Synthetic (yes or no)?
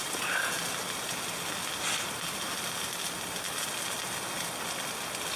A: no